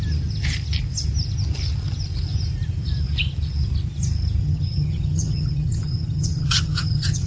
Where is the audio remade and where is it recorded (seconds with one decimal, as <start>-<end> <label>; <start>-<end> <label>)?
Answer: 0.0-4.4 recorded; 4.4-7.3 remade